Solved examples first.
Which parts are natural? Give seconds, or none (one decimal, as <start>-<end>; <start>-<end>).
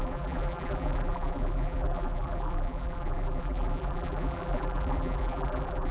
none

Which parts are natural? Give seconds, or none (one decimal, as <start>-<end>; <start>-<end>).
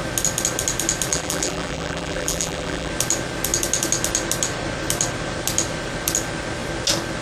0.0-1.1; 2.9-7.2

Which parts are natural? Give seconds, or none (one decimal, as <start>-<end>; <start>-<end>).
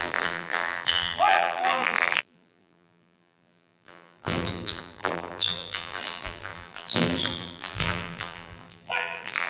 none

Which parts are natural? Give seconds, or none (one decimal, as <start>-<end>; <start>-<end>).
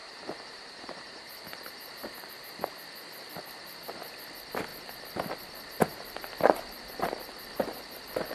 2.3-8.3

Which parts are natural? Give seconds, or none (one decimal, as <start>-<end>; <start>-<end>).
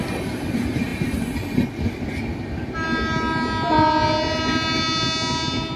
0.0-5.8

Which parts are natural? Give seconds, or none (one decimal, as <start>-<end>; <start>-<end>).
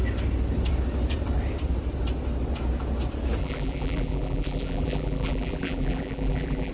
0.0-3.4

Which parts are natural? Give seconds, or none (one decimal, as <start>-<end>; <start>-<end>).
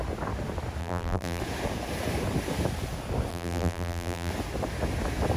0.0-0.8; 1.4-3.3; 4.3-5.4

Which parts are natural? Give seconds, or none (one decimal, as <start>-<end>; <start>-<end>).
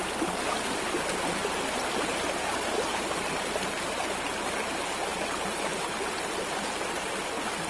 0.0-7.7